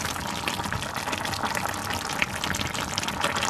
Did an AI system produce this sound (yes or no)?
no